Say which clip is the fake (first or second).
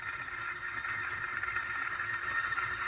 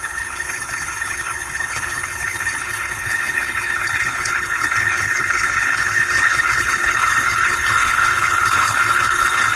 second